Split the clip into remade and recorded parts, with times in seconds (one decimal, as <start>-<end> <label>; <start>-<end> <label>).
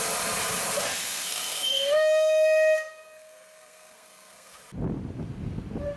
0.0-1.0 recorded; 1.0-4.6 remade; 4.6-6.0 recorded